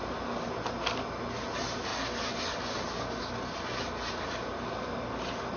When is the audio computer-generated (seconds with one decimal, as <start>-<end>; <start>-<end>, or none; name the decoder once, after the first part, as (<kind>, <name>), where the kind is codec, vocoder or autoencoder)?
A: none